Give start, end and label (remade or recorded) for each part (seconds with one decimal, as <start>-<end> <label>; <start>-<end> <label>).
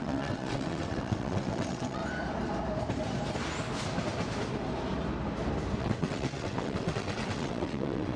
0.0-2.0 remade; 2.0-5.8 recorded; 5.8-8.2 remade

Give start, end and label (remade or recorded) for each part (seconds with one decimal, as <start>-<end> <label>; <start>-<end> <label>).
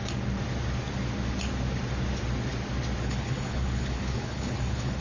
0.0-3.0 recorded; 3.0-5.0 remade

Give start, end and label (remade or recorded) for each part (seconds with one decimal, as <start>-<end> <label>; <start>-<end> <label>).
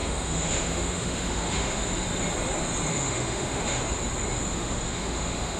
0.0-1.9 remade; 1.9-2.9 recorded; 2.9-3.8 remade; 3.8-4.5 recorded; 4.5-5.6 remade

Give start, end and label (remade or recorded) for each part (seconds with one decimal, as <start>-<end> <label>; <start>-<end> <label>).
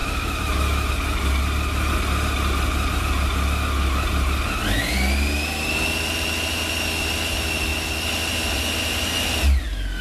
0.0-0.9 remade; 0.9-10.0 recorded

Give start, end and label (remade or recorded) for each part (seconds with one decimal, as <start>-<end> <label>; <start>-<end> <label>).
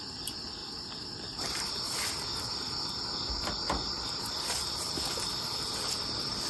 0.0-6.5 recorded